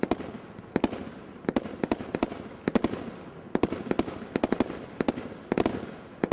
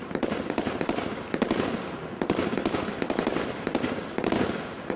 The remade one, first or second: second